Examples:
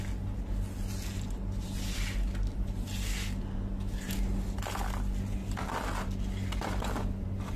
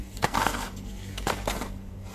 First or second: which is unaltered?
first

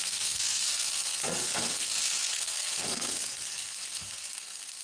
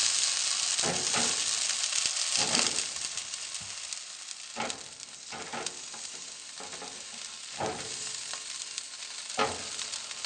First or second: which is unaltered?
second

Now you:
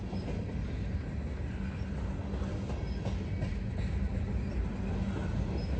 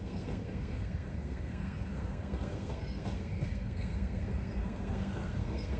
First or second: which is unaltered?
first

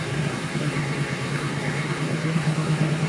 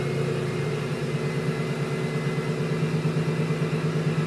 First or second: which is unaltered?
second